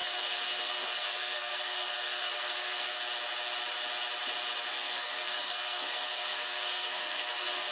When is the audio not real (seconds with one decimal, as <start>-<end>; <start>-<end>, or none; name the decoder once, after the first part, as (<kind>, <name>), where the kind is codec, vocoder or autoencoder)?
0.0-3.0 (codec, SNAC); 4.7-7.7